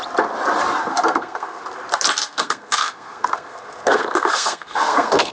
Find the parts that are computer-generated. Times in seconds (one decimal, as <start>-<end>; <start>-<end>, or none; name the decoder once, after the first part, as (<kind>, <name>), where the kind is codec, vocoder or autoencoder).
0.9-1.6 (codec, SNAC); 2.2-5.3